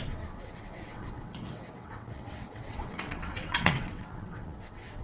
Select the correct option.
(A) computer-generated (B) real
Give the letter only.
A